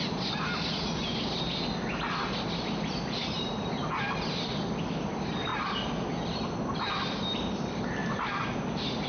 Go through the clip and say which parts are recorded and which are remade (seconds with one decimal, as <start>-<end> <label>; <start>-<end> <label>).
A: 0.0-9.1 recorded

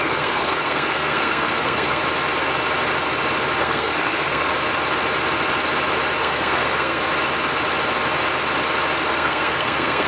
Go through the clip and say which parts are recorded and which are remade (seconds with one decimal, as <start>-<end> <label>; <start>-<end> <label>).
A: 0.0-2.0 remade; 2.0-3.6 recorded; 3.6-4.5 remade; 4.5-6.2 recorded; 6.2-7.0 remade; 7.0-9.1 recorded; 9.1-10.1 remade